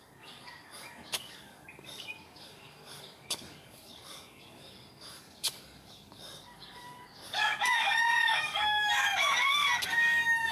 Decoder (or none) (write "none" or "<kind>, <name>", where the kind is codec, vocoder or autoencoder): codec, DAC